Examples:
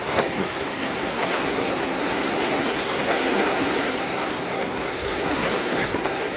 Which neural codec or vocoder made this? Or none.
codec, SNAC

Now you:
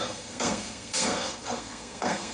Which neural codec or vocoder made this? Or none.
codec, SNAC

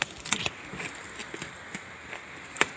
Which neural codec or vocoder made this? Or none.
none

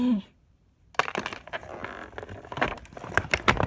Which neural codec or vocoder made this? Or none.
none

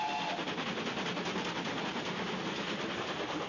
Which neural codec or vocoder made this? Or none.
none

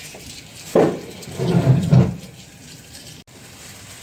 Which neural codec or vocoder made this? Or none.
none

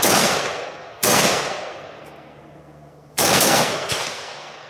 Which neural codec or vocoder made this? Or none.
codec, SNAC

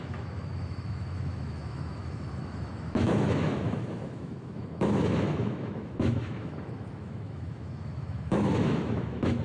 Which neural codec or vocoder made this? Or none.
autoencoder, DAC-VAE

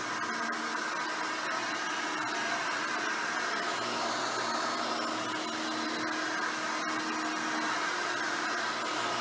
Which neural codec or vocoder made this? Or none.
none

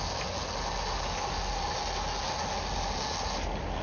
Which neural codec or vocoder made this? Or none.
none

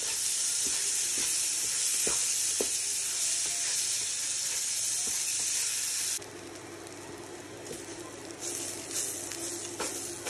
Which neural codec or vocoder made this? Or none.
none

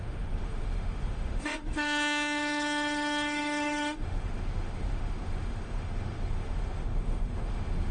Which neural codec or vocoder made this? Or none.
autoencoder, DAC-VAE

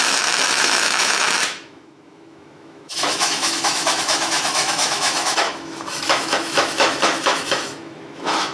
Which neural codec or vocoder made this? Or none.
autoencoder, DAC-VAE